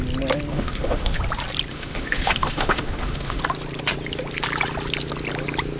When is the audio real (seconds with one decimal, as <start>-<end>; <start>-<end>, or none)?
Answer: 0.0-0.5; 1.2-1.7; 3.4-5.8